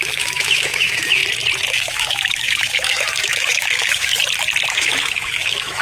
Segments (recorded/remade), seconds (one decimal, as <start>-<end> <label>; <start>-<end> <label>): 0.0-1.2 remade; 1.2-1.7 recorded; 1.7-4.1 remade; 4.1-4.7 recorded; 4.7-5.8 remade